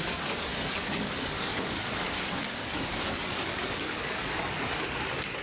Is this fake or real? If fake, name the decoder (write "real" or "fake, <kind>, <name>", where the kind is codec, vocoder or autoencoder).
fake, codec, DAC